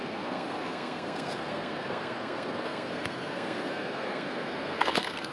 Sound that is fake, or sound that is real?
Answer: fake